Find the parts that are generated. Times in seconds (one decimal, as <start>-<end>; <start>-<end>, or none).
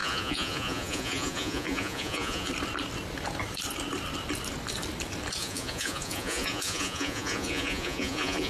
0.0-2.5; 5.4-8.5